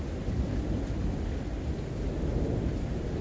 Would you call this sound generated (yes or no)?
no